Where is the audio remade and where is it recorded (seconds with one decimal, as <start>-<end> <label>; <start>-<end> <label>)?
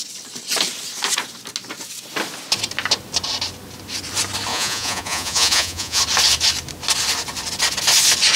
0.0-4.5 recorded; 4.5-6.0 remade; 6.0-8.4 recorded